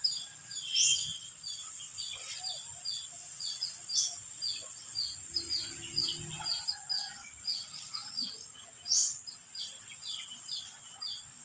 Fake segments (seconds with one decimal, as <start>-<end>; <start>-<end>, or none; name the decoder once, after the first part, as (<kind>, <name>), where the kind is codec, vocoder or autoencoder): 3.2-3.8 (vocoder, WaveNeXt)